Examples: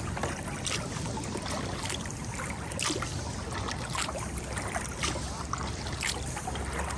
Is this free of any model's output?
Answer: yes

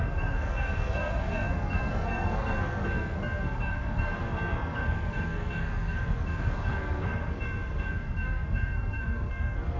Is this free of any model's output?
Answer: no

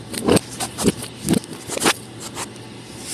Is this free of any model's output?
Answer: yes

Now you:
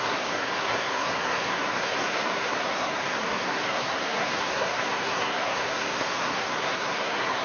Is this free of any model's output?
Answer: no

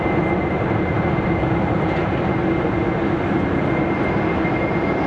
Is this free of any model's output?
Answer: yes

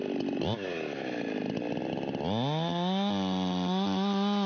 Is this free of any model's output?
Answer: yes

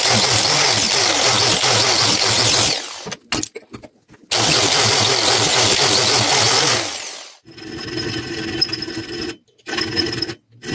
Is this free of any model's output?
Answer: yes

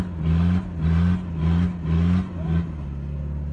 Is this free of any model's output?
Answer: yes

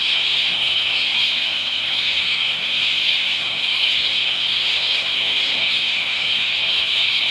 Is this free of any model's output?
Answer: no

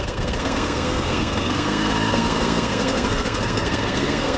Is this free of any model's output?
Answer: no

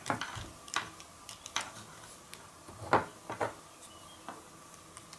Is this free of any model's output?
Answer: yes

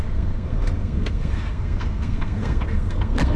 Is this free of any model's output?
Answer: no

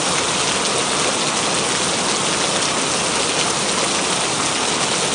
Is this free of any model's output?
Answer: yes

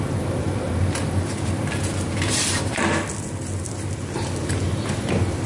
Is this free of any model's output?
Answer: yes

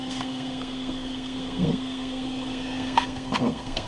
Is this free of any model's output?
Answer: no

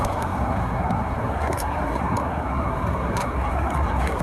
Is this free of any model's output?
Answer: no